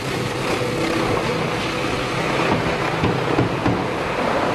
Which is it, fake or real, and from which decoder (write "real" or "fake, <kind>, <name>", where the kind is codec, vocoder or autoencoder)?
real